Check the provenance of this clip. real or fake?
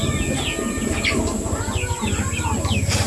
real